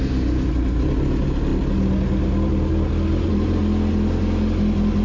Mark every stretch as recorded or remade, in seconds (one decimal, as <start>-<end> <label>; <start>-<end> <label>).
0.0-5.0 recorded